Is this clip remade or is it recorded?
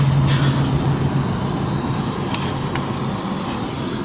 recorded